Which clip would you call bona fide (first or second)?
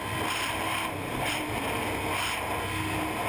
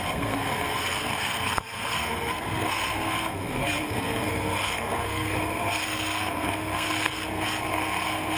first